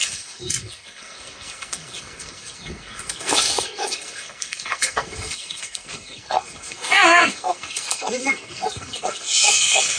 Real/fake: fake